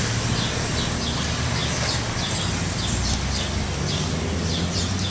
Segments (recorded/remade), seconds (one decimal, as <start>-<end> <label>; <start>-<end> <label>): 0.0-5.1 recorded